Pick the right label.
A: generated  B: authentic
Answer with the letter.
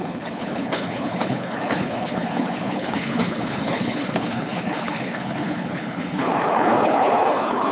A